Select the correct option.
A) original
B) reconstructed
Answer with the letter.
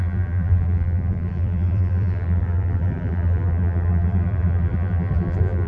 B